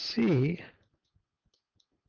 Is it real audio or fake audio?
real